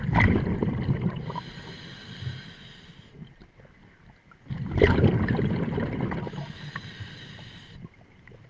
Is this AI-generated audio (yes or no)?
no